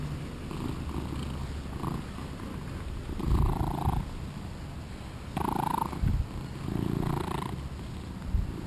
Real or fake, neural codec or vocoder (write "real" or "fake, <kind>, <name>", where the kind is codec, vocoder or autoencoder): real